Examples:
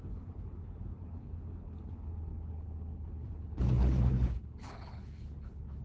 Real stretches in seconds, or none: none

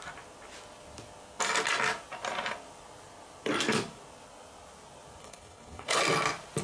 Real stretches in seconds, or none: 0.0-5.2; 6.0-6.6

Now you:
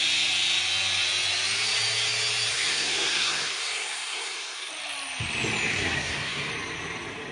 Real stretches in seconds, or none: 0.0-2.5; 4.7-5.7; 6.5-7.3